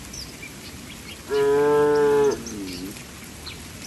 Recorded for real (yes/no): yes